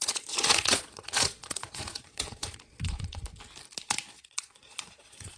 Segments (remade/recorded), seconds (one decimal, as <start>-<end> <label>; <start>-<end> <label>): 0.0-3.2 remade; 3.2-4.2 recorded; 4.2-5.4 remade